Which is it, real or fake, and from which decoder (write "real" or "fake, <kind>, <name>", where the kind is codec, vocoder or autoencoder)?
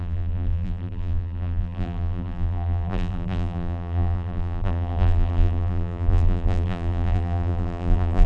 fake, vocoder, BigVGAN v2